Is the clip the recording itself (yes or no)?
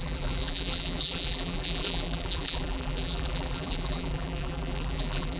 no